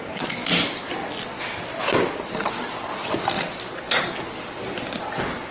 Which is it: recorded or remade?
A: recorded